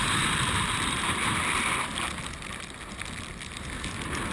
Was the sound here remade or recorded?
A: recorded